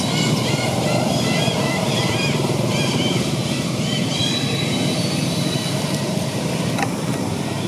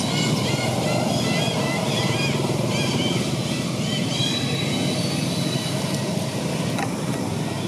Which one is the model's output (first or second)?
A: first